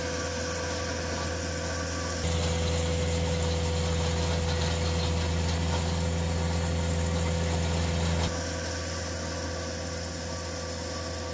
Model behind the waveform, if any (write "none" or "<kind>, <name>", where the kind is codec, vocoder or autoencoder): none